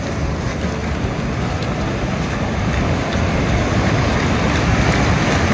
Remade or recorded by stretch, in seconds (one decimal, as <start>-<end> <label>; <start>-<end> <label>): 0.0-5.5 recorded